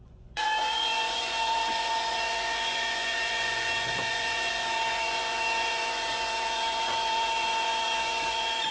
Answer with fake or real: fake